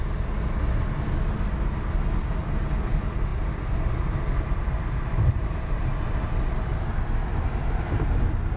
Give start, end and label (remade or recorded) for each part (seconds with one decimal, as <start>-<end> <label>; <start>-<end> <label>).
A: 0.0-8.6 recorded

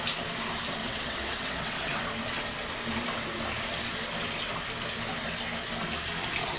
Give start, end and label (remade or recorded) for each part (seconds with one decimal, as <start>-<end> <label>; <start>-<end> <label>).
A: 0.0-0.8 recorded; 0.8-2.0 remade; 2.0-6.6 recorded

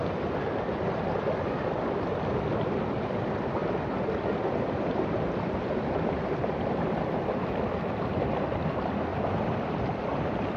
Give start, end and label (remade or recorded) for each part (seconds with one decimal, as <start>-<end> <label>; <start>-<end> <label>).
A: 0.0-3.6 recorded; 3.6-7.7 remade; 7.7-9.1 recorded; 9.1-10.6 remade

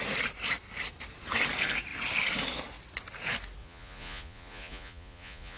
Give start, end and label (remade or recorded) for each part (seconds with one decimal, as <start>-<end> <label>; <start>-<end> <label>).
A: 0.0-3.6 recorded; 3.6-5.6 remade

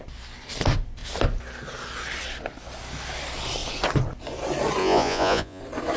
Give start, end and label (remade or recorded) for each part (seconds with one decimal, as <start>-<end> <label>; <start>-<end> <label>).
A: 0.0-4.8 recorded; 4.8-5.6 remade; 5.6-6.0 recorded

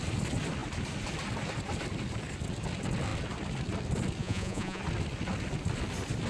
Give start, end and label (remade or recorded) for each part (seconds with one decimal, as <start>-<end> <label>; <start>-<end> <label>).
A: 0.0-4.2 recorded; 4.2-4.8 remade; 4.8-6.3 recorded

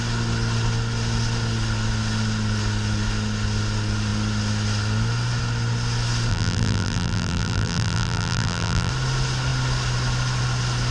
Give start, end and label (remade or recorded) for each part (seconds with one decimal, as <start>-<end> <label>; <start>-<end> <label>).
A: 0.0-6.3 recorded; 6.3-8.9 remade; 8.9-10.9 recorded

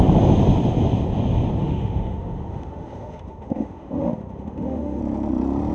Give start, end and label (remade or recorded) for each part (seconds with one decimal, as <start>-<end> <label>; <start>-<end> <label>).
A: 0.0-1.6 recorded; 1.6-5.0 remade; 5.0-5.7 recorded